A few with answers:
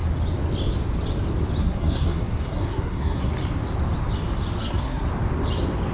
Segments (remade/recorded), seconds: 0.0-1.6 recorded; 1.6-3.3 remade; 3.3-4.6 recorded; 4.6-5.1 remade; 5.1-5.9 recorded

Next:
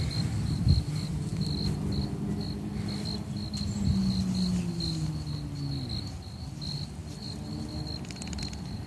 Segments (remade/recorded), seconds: 0.0-8.9 recorded

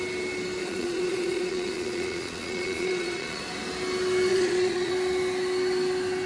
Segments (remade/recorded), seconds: 0.0-0.6 recorded; 0.6-3.4 remade; 3.4-4.3 recorded; 4.3-4.9 remade; 4.9-6.3 recorded

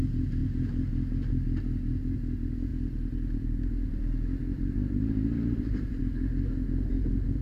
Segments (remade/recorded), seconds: 0.0-0.4 recorded; 0.4-1.3 remade; 1.3-2.7 recorded; 2.7-6.0 remade; 6.0-7.4 recorded

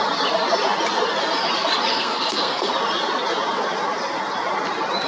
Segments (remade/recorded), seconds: 0.0-1.9 recorded; 1.9-2.7 remade; 2.7-5.1 recorded

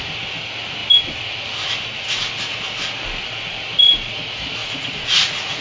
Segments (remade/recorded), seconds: 0.0-4.6 recorded; 4.6-5.6 remade